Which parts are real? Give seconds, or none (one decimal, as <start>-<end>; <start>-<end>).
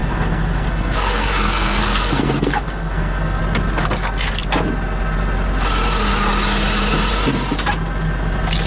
3.4-8.7